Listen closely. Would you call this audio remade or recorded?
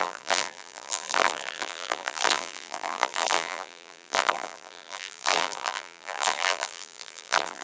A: remade